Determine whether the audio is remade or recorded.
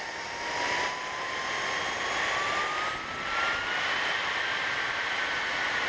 recorded